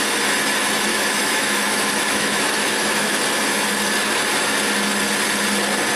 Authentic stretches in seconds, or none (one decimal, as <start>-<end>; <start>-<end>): 0.0-0.9; 3.2-6.0